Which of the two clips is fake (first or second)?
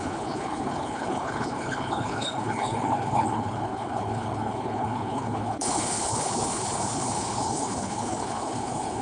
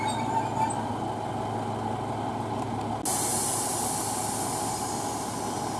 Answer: first